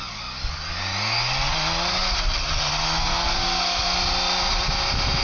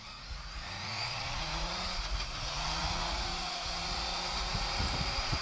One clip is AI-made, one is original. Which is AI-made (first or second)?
second